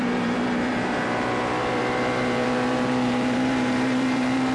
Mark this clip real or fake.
fake